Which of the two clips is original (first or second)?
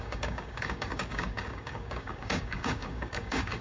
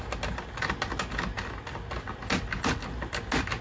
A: second